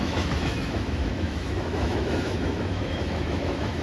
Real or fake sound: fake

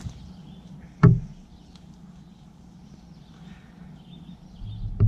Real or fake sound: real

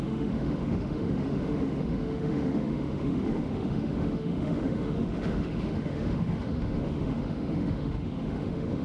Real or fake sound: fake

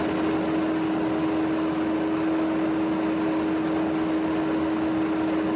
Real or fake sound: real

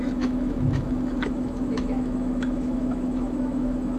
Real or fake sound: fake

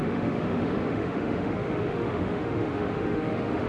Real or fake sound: fake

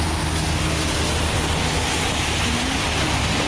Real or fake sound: real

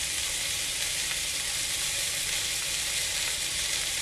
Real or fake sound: real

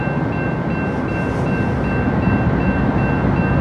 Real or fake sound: real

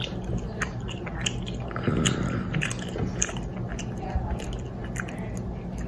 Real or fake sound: real